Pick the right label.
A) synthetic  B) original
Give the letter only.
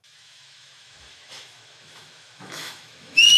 A